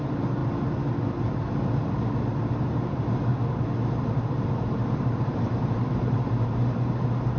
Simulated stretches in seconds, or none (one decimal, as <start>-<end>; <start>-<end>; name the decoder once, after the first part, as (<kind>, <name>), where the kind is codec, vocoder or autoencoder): 0.0-0.4 (vocoder, BigVGAN v2); 2.4-3.3; 4.3-7.4